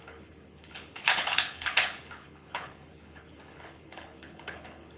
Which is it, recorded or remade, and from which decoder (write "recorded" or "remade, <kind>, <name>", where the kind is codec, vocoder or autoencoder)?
remade, codec, HILCodec